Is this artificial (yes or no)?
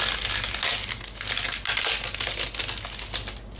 no